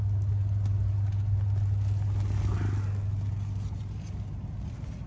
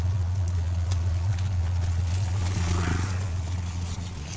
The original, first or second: first